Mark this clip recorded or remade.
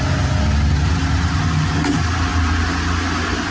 recorded